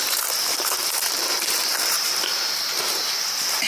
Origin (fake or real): fake